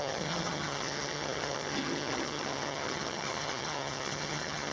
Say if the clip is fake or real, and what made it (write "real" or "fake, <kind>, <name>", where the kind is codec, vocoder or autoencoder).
fake, vocoder, HiFi-GAN